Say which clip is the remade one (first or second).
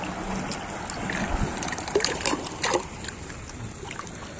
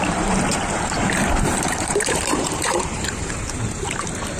second